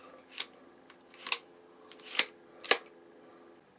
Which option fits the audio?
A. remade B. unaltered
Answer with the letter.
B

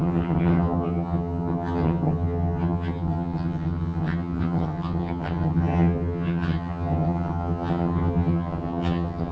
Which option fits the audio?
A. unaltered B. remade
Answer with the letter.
B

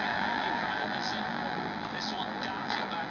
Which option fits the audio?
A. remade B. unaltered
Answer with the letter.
A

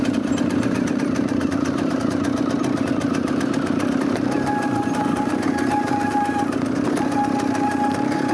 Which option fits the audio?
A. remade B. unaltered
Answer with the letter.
A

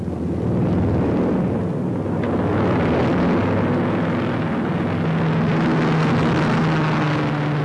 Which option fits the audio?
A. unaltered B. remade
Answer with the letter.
A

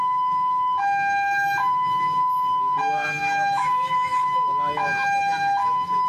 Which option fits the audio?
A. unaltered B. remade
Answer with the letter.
B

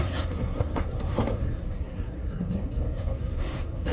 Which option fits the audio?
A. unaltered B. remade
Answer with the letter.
B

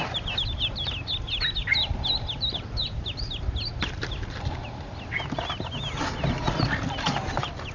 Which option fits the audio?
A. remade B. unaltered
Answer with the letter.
B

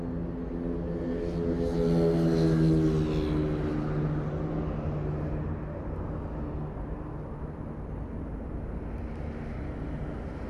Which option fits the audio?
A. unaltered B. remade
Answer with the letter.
A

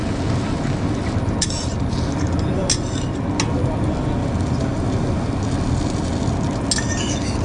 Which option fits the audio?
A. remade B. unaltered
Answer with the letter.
B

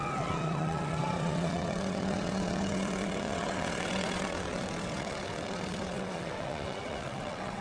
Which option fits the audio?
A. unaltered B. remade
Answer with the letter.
B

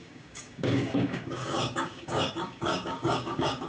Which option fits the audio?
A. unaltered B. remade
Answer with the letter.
B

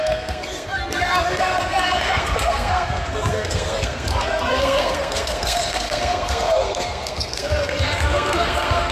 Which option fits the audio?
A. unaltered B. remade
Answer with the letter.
B